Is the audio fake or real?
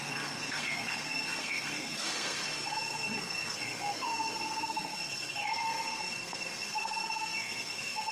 fake